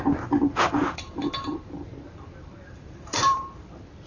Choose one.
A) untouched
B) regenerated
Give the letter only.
B